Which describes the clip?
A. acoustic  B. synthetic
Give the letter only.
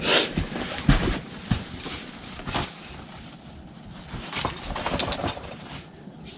A